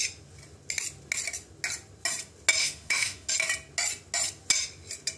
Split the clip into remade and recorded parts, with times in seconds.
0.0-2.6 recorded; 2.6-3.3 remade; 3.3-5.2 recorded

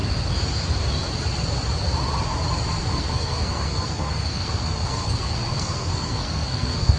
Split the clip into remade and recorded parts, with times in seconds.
0.0-2.8 recorded; 2.8-7.0 remade